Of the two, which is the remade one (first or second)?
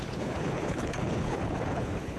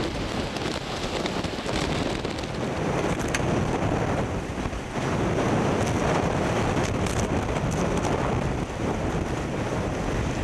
first